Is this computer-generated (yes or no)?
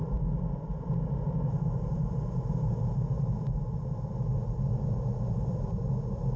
no